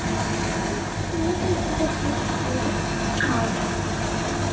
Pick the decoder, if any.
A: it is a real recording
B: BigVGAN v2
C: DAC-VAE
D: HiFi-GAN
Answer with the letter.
A